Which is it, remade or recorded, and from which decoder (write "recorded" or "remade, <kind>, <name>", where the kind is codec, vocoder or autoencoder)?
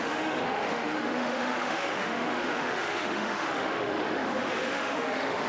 remade, autoencoder, DAC-VAE